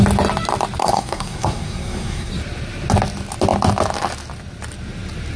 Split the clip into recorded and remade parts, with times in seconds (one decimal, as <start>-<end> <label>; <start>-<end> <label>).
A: 0.0-0.8 recorded; 0.8-2.3 remade; 2.3-5.4 recorded